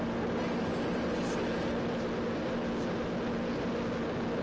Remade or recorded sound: recorded